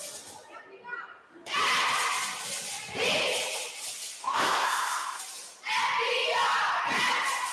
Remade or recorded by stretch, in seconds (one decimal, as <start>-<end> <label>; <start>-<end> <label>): 0.0-4.2 recorded; 4.2-5.2 remade; 5.2-7.5 recorded